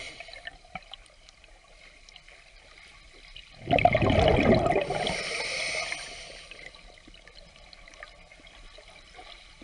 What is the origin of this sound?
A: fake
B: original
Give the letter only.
B